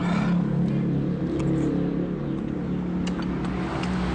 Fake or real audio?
real